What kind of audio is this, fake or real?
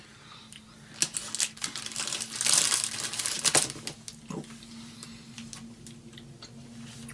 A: real